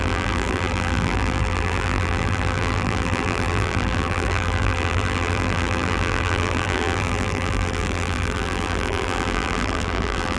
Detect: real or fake fake